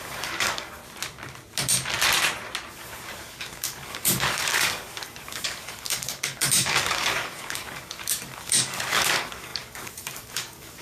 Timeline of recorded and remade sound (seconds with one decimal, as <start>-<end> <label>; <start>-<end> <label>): 0.0-0.8 remade; 0.8-2.7 recorded; 2.7-10.8 remade